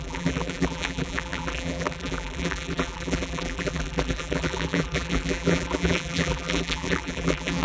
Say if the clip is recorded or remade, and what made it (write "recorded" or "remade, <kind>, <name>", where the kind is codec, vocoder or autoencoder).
remade, vocoder, BigVGAN v2